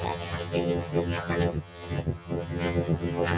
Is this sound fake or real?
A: fake